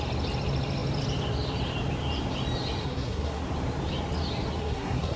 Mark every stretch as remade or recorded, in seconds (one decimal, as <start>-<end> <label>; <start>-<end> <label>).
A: 0.0-2.8 recorded; 2.8-3.4 remade; 3.4-4.6 recorded; 4.6-5.2 remade